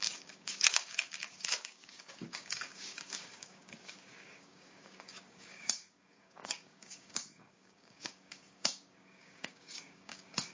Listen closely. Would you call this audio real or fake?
fake